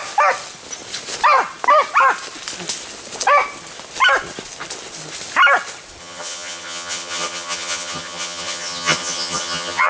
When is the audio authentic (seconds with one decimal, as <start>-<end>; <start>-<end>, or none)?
0.0-6.0